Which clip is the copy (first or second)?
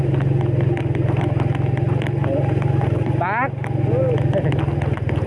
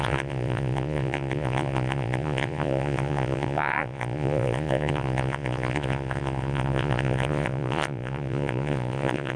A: second